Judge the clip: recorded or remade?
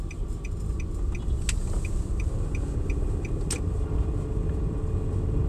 recorded